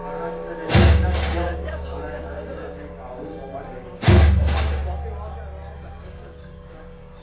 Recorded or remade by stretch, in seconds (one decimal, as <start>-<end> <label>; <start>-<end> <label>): 0.0-4.8 remade; 4.8-6.0 recorded; 6.0-7.2 remade